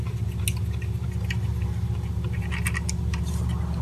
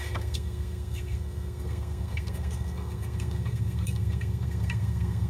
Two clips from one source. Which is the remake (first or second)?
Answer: second